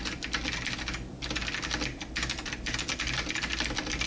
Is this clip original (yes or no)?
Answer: yes